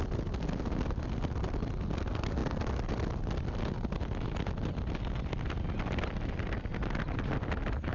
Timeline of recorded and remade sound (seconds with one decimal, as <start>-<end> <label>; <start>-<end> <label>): 0.0-7.9 recorded